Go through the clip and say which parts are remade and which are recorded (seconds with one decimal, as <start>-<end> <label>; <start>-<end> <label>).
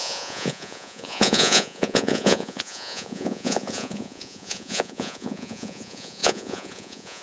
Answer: 0.0-7.2 remade